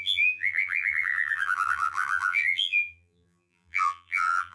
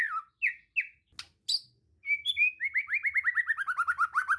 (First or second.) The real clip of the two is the second